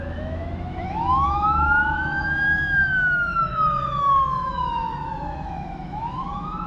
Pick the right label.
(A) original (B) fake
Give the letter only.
B